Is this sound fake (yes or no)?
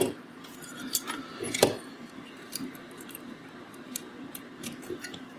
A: yes